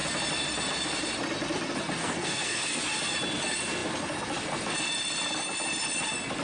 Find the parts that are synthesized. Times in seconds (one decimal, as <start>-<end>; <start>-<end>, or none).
2.0-2.8